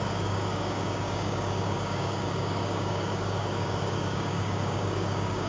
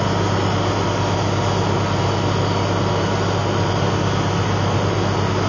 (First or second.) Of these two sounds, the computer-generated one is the first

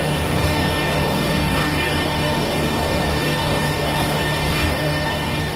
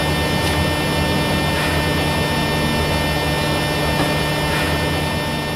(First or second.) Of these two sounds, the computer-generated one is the first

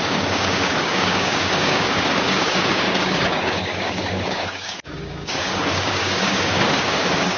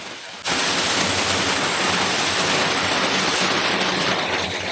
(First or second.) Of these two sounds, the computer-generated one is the first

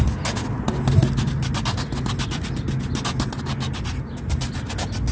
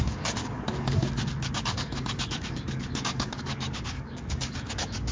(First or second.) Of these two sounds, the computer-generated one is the second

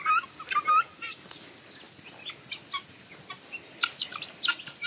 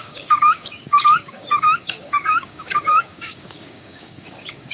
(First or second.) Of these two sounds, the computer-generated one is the second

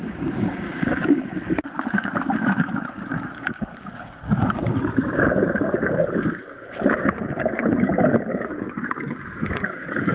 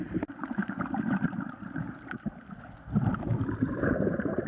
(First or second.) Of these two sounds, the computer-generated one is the first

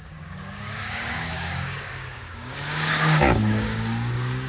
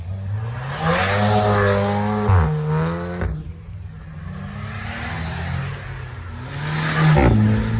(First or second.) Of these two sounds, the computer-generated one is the first